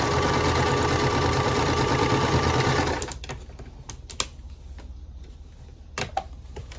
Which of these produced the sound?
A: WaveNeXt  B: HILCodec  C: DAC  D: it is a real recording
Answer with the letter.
D